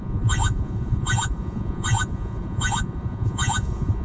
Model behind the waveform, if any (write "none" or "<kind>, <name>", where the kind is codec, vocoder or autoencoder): vocoder, Vocos